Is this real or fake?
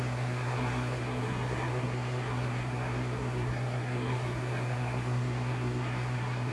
fake